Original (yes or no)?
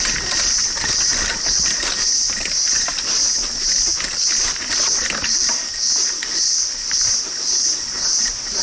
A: yes